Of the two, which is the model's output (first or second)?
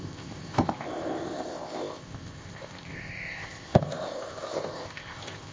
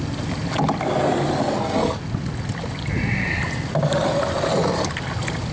first